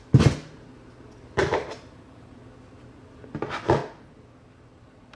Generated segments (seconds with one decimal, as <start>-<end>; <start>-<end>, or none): 1.4-2.3